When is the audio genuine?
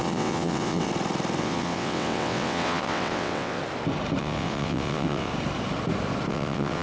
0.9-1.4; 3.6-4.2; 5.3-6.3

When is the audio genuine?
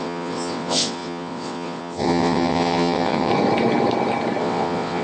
3.3-4.4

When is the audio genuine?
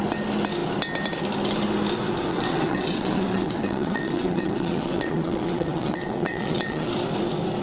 0.0-2.3; 6.9-7.6